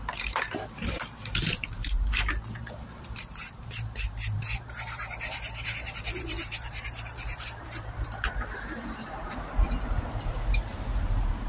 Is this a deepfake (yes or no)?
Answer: yes